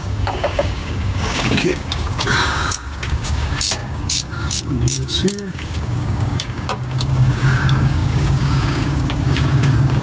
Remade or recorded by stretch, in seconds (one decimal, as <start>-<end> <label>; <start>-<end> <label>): 0.0-10.0 remade